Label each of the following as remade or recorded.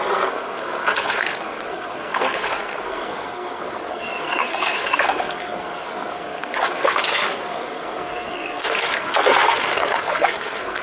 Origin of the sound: remade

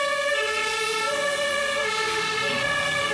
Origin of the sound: remade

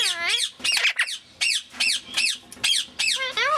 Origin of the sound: recorded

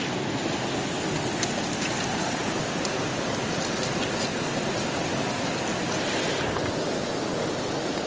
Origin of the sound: recorded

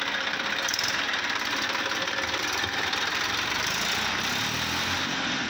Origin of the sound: remade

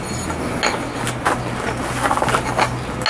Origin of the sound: recorded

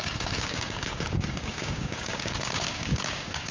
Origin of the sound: remade